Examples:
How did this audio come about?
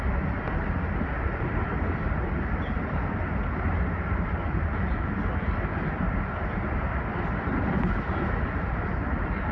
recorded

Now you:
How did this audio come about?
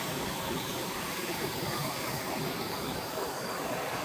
remade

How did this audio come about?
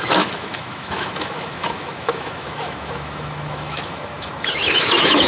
remade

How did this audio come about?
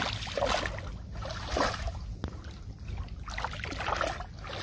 recorded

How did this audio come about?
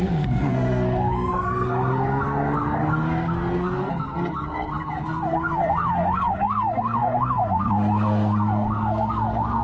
remade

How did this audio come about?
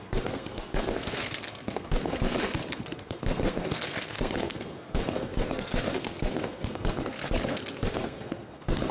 remade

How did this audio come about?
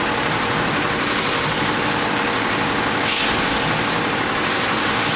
recorded